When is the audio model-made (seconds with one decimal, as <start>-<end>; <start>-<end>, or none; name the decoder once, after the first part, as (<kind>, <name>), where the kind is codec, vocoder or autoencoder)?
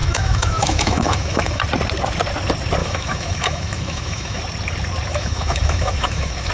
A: 0.0-1.6 (autoencoder, DAC-VAE); 2.8-4.4; 5.1-6.5